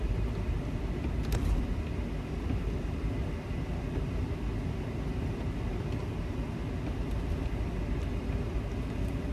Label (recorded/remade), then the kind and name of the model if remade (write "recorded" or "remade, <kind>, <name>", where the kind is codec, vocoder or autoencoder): recorded